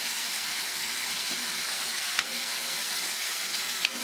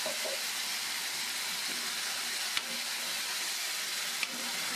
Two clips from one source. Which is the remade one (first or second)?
first